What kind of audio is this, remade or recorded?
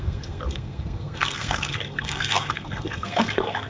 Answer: remade